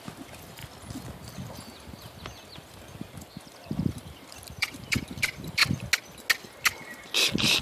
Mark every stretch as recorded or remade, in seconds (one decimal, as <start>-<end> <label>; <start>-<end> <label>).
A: 0.0-0.6 remade; 0.6-1.6 recorded; 1.6-5.6 remade; 5.6-7.6 recorded